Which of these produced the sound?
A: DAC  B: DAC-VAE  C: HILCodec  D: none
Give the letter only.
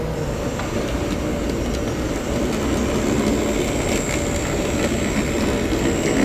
D